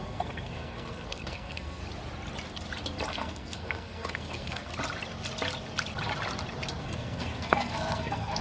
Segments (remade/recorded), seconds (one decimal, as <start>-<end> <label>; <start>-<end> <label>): 0.0-1.8 remade; 1.8-3.1 recorded; 3.1-4.7 remade; 4.7-6.8 recorded; 6.8-8.4 remade